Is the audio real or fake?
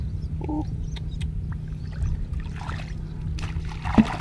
real